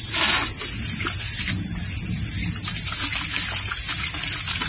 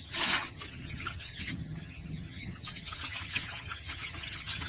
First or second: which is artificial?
second